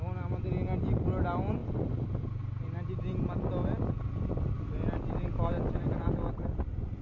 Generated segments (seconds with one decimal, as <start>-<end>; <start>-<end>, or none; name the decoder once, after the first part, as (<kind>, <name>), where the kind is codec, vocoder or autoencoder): none

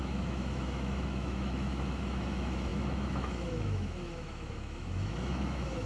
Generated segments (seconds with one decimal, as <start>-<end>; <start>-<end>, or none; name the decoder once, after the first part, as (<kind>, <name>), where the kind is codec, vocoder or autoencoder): 0.0-5.9 (autoencoder, DAC-VAE)